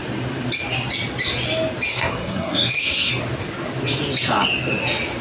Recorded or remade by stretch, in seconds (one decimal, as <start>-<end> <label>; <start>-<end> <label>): 0.0-1.9 recorded; 1.9-3.1 remade; 3.1-5.2 recorded